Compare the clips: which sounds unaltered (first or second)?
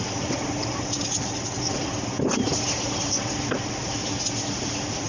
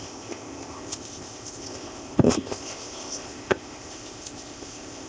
first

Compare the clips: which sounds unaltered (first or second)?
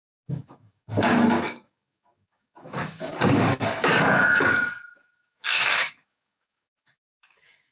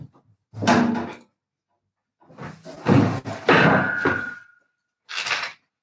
second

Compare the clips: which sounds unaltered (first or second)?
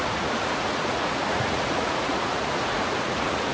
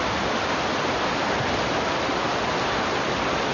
second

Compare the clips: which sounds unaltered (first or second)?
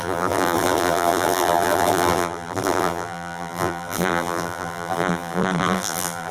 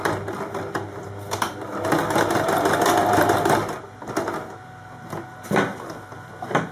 second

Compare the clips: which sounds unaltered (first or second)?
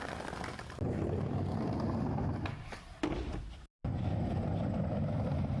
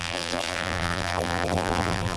first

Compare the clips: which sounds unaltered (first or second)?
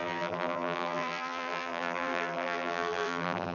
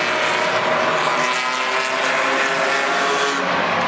second